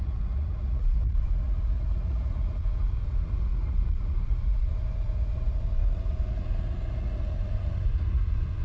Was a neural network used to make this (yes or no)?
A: yes